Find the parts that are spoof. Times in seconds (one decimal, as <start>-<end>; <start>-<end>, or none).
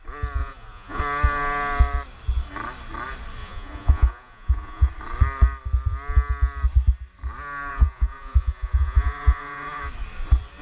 0.4-1.0; 3.4-4.9; 7.7-9.9